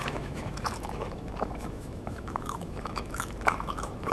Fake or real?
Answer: fake